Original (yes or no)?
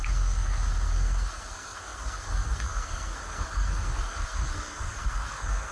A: no